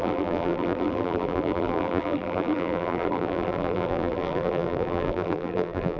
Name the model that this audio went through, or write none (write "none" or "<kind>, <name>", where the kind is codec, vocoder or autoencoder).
vocoder, BigVGAN v2